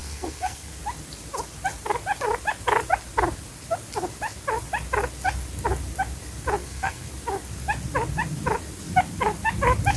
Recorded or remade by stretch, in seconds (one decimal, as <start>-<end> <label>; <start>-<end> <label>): 0.0-0.8 remade; 0.8-6.6 recorded; 6.6-7.1 remade; 7.1-10.0 recorded